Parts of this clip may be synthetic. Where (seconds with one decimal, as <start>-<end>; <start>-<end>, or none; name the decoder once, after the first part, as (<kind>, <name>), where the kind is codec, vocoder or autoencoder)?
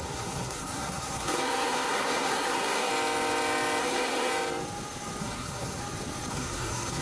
0.0-2.9 (codec, SNAC); 3.8-4.3; 5.2-5.8; 6.3-7.0